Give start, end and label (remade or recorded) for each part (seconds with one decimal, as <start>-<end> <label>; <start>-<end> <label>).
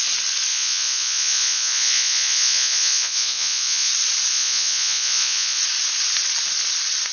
0.0-0.5 recorded; 0.5-3.9 remade; 3.9-4.3 recorded; 4.3-5.6 remade; 5.6-7.1 recorded